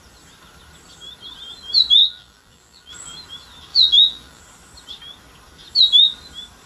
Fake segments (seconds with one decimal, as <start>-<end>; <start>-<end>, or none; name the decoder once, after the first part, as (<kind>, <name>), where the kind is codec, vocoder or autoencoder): 2.0-2.9 (vocoder, BigVGAN v2); 3.7-4.4